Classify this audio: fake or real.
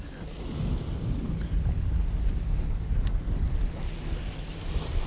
real